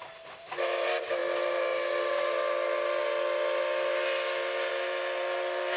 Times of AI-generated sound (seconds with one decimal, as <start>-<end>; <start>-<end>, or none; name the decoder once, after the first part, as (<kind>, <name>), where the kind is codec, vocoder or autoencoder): none